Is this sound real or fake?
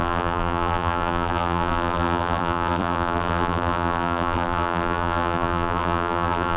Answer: fake